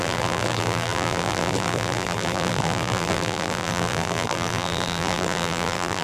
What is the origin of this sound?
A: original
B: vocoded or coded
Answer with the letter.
B